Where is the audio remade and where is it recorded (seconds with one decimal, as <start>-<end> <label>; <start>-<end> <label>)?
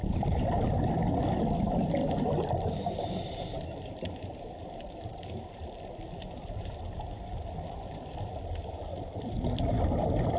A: 0.0-2.0 remade; 2.0-3.1 recorded; 3.1-10.4 remade